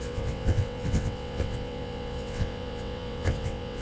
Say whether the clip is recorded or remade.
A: remade